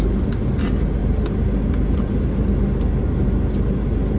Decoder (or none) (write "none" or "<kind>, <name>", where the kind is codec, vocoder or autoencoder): none